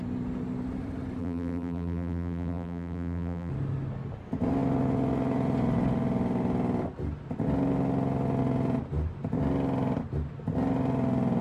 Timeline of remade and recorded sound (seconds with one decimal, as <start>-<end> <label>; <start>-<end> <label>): 0.0-1.2 recorded; 1.2-3.5 remade; 3.5-11.4 recorded